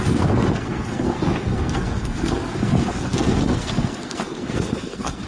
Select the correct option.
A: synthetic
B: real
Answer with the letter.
A